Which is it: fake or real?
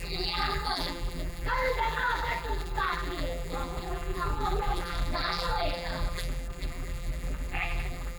fake